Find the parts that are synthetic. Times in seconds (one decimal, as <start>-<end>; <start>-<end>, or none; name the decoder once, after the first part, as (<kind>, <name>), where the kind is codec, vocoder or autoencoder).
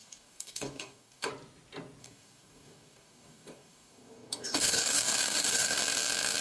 0.0-1.3 (codec, DAC); 2.0-5.8